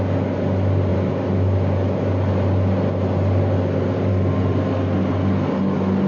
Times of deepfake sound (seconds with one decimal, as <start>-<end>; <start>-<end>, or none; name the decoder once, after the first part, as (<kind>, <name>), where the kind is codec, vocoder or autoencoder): none